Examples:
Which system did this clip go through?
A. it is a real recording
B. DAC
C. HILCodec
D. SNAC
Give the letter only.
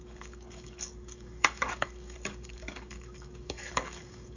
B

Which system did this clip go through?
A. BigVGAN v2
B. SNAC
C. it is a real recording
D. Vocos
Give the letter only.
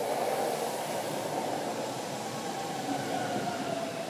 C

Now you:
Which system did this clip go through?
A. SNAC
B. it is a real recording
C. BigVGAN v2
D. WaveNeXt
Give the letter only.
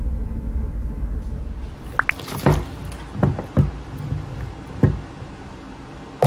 B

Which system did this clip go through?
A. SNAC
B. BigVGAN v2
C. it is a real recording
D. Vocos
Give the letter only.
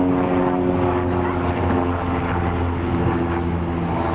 C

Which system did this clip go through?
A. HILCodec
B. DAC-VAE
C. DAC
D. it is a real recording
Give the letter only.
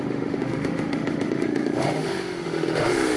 B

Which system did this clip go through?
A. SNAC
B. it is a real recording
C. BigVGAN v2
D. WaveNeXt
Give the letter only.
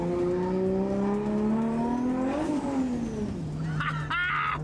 B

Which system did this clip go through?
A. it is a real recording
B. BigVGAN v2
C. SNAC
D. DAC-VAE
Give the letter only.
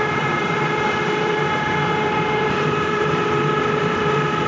B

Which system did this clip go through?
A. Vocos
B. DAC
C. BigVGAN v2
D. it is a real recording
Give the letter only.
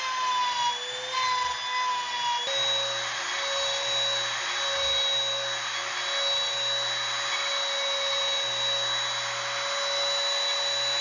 D